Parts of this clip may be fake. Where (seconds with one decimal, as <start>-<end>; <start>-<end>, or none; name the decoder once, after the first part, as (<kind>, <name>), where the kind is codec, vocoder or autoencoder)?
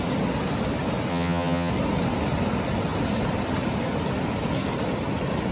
1.1-1.7 (vocoder, HiFi-GAN)